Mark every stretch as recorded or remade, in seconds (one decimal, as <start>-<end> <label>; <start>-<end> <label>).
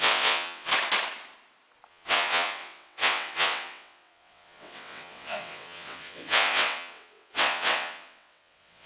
0.0-0.7 remade; 0.7-1.9 recorded; 1.9-8.9 remade